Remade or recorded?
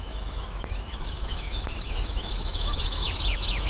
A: remade